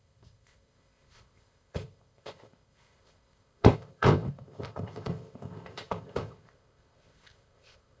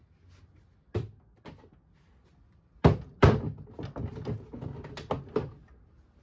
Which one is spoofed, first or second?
first